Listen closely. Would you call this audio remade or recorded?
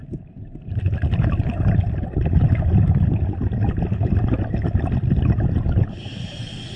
recorded